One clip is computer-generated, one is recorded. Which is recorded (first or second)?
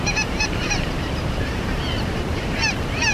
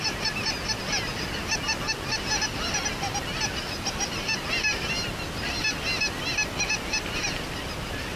second